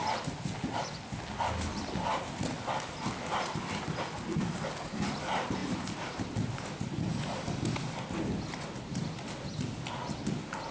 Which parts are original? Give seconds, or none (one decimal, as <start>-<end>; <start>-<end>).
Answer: 0.0-10.7